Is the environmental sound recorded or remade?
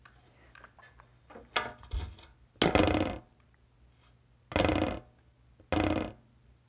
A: recorded